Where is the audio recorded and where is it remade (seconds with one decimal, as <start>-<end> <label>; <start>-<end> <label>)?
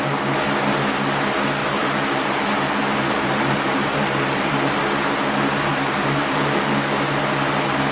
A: 0.0-1.6 recorded; 1.6-2.4 remade; 2.4-2.8 recorded; 2.8-4.8 remade; 4.8-5.7 recorded; 5.7-6.7 remade; 6.7-7.9 recorded